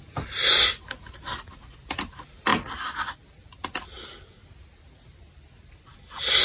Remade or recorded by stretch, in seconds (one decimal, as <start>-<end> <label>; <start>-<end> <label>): 0.0-6.4 recorded